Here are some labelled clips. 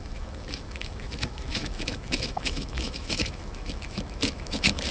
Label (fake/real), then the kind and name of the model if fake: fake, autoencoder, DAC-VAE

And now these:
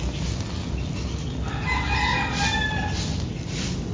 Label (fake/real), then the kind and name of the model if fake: real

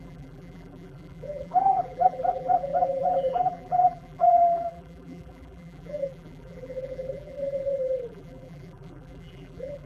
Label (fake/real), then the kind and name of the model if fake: fake, vocoder, BigVGAN v2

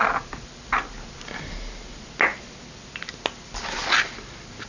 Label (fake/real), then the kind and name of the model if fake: real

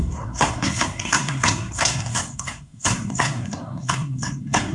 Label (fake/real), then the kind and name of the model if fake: fake, codec, SNAC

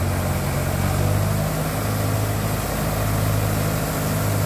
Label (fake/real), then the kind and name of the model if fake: real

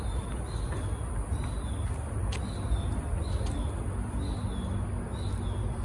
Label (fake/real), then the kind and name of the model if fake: real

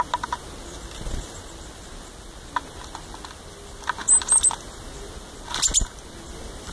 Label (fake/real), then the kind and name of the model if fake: real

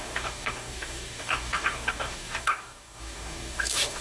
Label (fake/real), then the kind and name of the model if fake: fake, codec, DAC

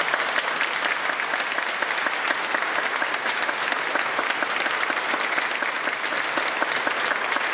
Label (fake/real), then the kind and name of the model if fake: real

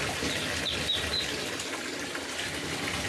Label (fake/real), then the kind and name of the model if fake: real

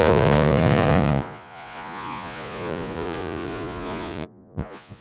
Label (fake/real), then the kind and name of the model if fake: fake, vocoder, Vocos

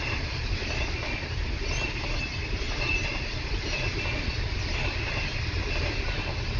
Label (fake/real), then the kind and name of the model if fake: real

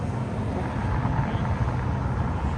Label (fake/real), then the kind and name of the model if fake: real